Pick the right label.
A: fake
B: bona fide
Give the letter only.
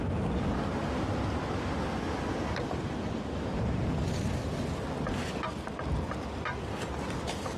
B